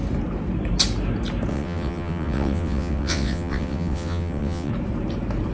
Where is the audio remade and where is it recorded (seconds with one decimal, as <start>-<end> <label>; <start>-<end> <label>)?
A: 0.0-1.5 recorded; 1.5-4.7 remade; 4.7-5.5 recorded